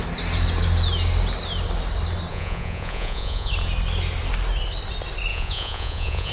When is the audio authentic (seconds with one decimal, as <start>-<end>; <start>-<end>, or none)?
0.0-2.3; 3.5-5.3